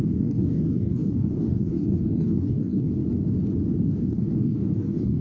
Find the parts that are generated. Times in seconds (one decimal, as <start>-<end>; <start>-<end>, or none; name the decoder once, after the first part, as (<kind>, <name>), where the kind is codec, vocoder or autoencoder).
0.0-3.0 (codec, DAC); 3.8-5.2